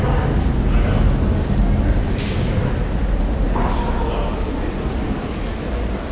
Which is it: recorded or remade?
recorded